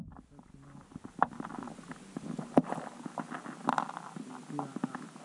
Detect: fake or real real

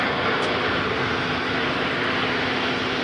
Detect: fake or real real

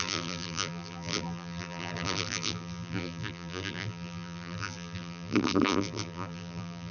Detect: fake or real fake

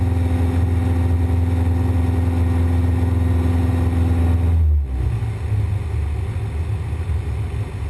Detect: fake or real real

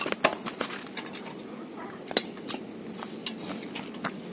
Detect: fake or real real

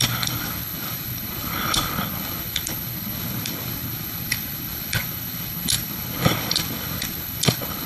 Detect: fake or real fake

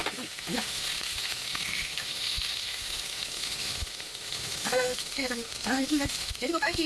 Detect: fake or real fake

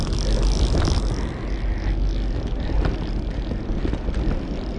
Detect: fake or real real